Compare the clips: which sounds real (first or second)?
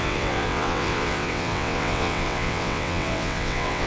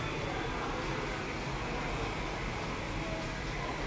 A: second